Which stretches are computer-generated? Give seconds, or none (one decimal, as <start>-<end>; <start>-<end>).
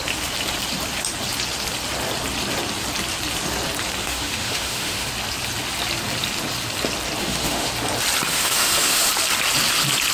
4.0-5.1; 7.2-7.7; 8.3-9.1